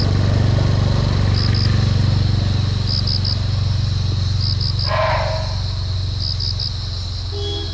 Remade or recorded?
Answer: recorded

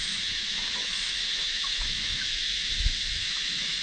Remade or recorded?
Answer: remade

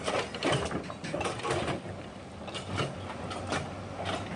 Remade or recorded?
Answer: recorded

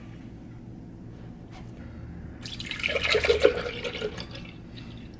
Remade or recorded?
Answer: recorded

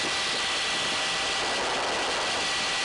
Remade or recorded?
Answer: recorded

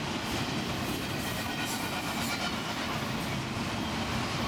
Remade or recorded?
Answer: recorded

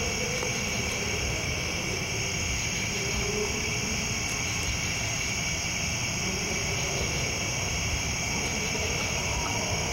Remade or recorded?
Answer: recorded